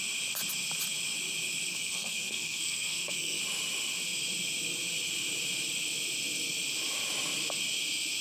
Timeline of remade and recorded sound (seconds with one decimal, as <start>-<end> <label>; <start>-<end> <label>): 0.0-1.7 recorded; 1.7-3.4 remade; 3.4-8.2 recorded